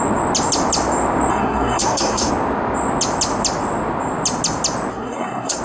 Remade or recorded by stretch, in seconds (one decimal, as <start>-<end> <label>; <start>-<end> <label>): 0.0-1.3 recorded; 1.3-2.3 remade; 2.3-4.9 recorded; 4.9-5.6 remade